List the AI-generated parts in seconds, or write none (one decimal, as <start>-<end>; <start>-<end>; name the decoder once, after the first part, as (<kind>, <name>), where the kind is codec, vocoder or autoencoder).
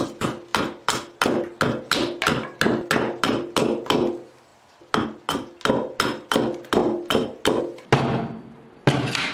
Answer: none